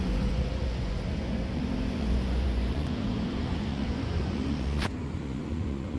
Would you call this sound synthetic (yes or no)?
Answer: yes